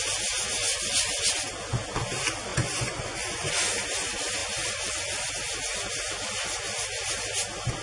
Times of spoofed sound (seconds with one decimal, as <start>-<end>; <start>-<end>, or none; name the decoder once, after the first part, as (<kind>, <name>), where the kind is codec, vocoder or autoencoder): 0.7-1.3 (vocoder, Vocos); 2.5-3.5; 4.4-5.3